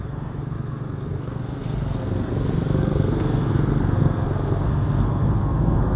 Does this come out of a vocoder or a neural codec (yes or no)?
yes